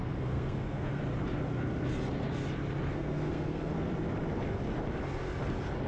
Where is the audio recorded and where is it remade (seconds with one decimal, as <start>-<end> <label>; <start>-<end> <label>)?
0.0-1.0 remade; 1.0-2.9 recorded; 2.9-3.7 remade; 3.7-5.9 recorded